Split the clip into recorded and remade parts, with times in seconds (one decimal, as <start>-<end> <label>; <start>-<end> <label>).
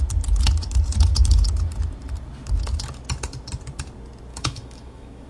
0.0-4.3 recorded; 4.3-5.3 remade